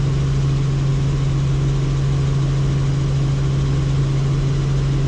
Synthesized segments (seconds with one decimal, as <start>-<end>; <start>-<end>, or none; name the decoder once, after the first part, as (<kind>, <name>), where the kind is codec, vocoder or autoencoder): none